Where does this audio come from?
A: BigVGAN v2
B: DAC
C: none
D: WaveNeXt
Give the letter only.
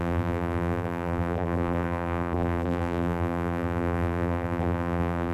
A